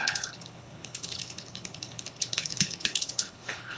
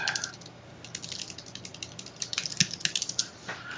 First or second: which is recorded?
second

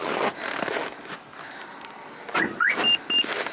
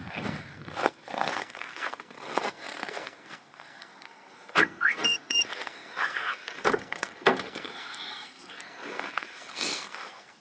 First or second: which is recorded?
first